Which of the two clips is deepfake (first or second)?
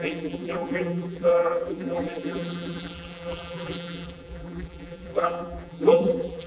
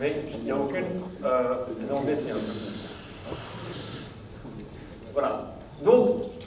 first